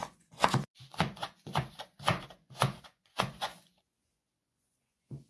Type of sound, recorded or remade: remade